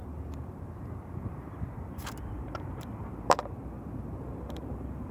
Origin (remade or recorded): remade